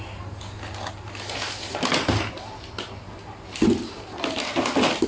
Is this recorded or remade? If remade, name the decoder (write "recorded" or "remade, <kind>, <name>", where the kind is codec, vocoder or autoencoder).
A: recorded